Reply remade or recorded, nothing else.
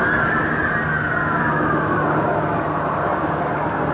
recorded